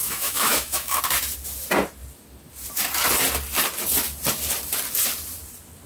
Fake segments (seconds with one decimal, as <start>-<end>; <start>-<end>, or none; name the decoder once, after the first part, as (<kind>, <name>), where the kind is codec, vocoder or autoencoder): 0.0-1.0 (autoencoder, DAC-VAE)